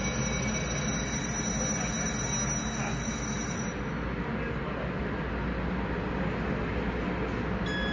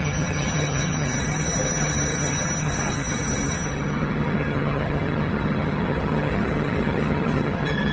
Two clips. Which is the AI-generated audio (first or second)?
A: second